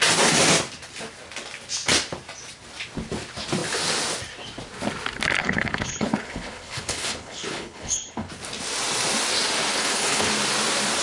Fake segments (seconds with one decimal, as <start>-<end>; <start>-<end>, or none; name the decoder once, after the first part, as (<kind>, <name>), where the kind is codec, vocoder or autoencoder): 5.4-8.3 (codec, HILCodec); 9.7-10.3